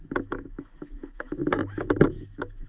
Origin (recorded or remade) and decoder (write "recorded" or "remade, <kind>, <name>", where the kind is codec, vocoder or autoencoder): remade, autoencoder, DAC-VAE